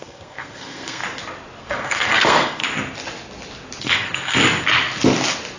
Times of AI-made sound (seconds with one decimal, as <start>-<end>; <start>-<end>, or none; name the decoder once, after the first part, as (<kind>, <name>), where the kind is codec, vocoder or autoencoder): 0.0-1.0 (codec, SNAC); 1.6-2.6; 3.8-4.4